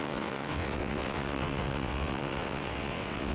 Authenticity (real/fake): fake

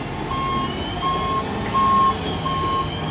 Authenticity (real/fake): real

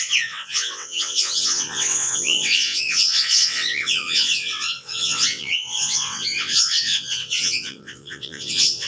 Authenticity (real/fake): fake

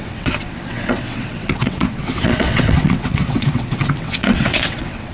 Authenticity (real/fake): fake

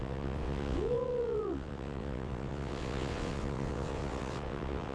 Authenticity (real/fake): fake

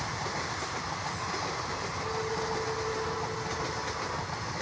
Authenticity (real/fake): real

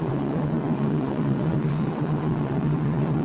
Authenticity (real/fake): fake